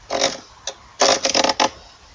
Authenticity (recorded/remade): recorded